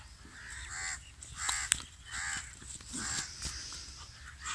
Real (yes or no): yes